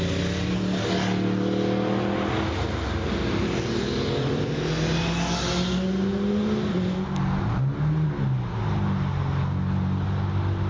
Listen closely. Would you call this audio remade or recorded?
recorded